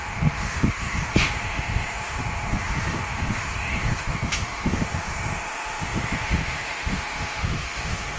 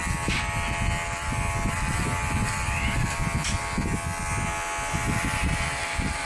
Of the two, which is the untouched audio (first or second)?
second